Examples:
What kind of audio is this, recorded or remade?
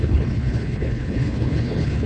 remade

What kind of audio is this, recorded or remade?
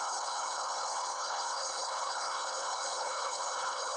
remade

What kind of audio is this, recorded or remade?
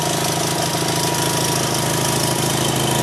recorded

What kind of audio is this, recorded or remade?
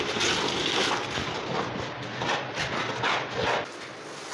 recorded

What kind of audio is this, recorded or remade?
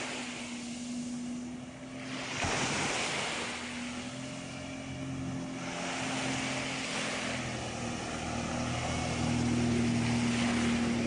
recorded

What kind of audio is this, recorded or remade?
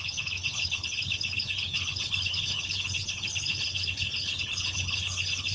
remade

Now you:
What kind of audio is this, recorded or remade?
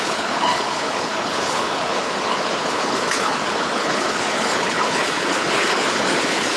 remade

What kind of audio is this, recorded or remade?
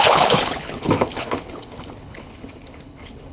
remade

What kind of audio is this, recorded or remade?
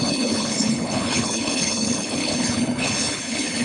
remade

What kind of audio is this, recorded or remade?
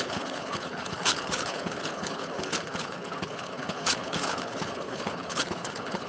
remade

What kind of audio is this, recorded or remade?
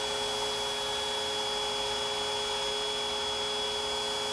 recorded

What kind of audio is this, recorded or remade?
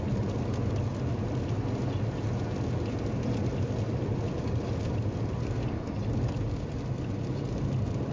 recorded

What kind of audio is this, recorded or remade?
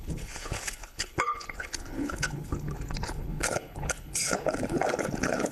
remade